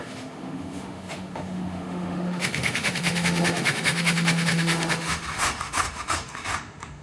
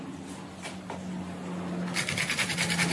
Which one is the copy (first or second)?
first